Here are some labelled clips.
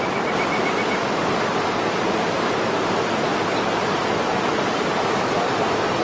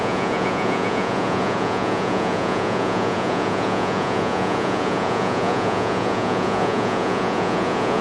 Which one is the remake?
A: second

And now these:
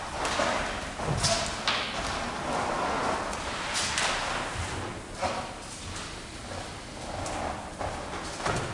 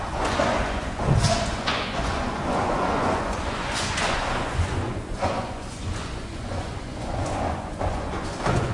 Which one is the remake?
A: second